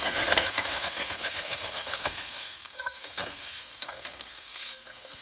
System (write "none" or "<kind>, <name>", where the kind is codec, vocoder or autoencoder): codec, SNAC